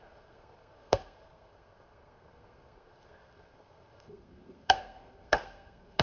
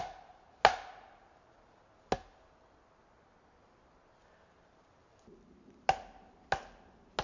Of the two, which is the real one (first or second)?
second